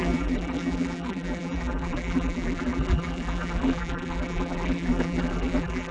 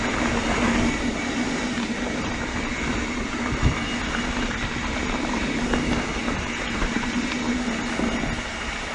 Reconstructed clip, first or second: first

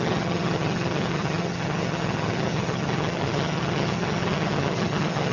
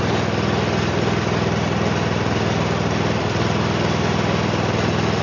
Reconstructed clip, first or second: first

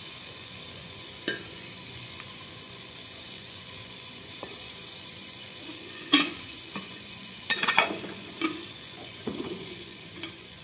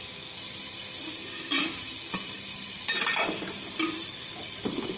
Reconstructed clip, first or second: first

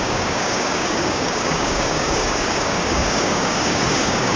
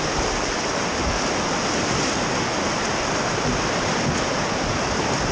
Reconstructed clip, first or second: first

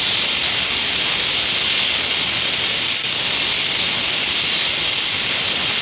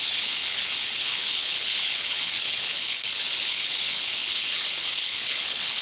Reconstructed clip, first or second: second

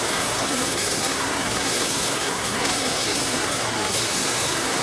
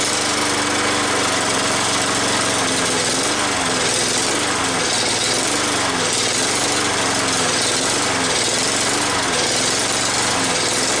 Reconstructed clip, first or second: first